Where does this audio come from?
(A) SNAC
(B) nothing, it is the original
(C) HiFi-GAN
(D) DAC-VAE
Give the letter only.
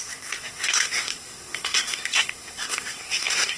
A